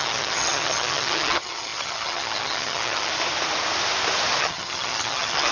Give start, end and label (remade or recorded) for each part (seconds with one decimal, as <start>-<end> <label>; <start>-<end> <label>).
0.0-3.1 remade; 3.1-4.4 recorded; 4.4-5.5 remade